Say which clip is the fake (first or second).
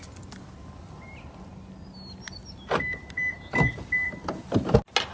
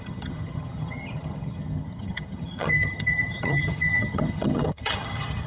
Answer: second